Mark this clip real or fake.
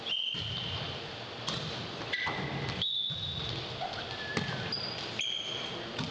real